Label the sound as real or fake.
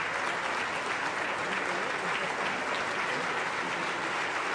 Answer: real